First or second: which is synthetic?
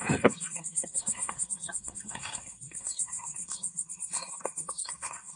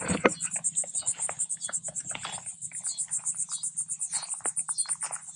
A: first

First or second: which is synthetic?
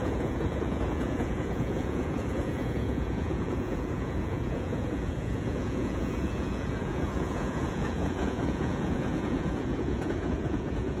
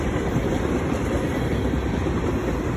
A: first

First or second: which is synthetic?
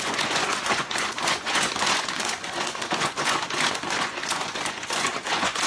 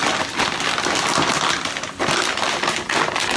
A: first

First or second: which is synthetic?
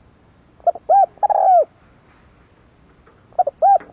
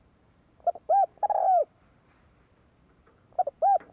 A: second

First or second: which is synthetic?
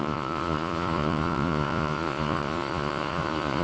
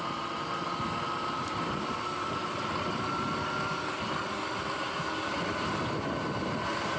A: first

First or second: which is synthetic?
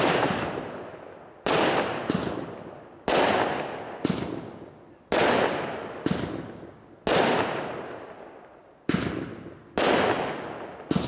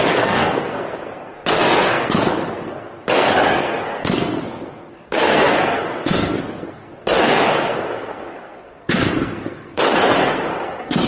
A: second